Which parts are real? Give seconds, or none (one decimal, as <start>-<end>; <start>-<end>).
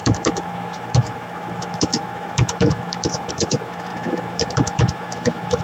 none